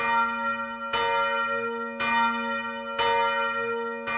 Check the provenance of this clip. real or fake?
real